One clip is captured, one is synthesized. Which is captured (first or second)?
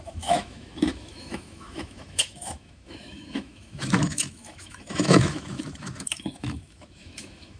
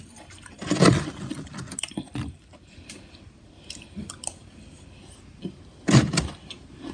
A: second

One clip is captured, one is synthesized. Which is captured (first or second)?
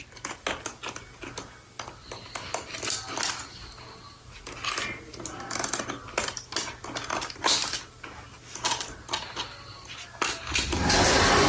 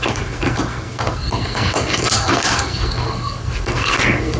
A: first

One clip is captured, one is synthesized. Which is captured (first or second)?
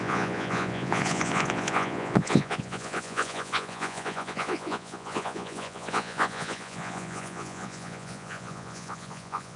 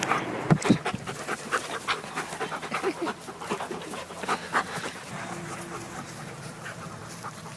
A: second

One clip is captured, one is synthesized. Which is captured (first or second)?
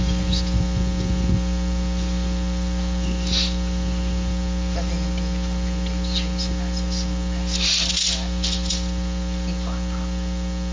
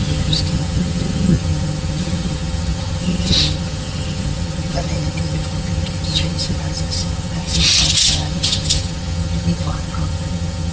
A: first